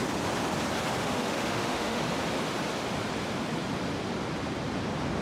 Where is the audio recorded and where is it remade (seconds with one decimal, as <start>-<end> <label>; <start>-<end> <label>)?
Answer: 0.0-1.0 recorded; 1.0-2.0 remade; 2.0-5.2 recorded